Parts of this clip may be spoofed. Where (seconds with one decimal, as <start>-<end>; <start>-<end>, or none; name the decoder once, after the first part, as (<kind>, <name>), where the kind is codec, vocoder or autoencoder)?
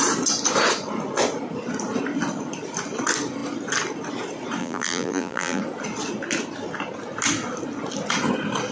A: 4.6-5.6 (vocoder, BigVGAN v2)